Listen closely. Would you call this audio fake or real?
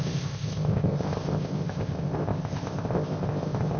fake